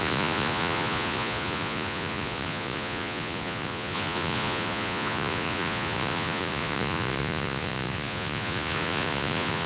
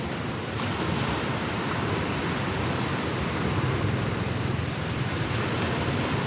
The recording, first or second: second